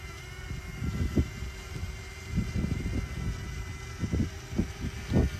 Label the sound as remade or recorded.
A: recorded